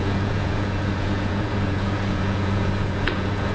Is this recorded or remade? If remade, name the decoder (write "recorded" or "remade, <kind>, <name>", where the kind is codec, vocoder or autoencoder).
remade, vocoder, Vocos